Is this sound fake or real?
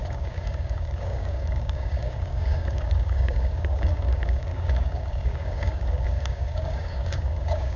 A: fake